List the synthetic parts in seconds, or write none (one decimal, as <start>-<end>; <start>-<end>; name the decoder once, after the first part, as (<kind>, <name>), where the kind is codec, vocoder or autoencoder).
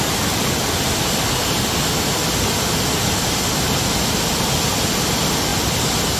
none